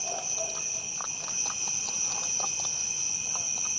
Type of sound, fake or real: real